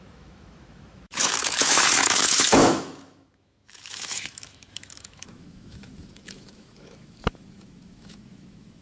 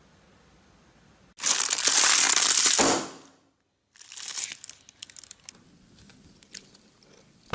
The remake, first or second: first